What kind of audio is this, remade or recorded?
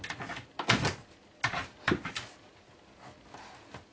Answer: recorded